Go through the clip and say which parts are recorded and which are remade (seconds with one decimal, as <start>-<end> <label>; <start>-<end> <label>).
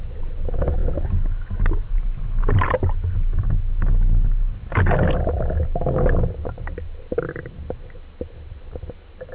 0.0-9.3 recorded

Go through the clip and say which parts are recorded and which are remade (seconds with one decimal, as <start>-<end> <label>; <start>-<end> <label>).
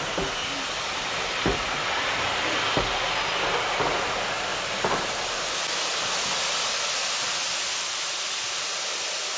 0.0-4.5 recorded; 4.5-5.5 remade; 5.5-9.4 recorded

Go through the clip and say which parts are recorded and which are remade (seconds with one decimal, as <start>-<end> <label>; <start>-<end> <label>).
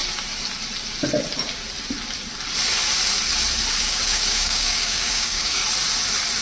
0.0-3.8 recorded; 3.8-5.6 remade; 5.6-6.4 recorded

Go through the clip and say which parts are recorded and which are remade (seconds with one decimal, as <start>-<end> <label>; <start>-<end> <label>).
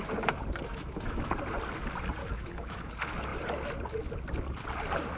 0.0-0.7 recorded; 0.7-1.3 remade; 1.3-2.2 recorded; 2.2-2.9 remade; 2.9-5.2 recorded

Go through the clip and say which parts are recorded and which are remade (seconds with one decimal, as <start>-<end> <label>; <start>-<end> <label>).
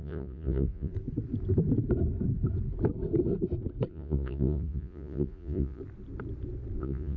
0.0-0.9 remade; 0.9-3.9 recorded; 3.9-5.8 remade; 5.8-6.8 recorded; 6.8-7.2 remade